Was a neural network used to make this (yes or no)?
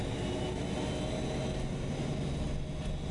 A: no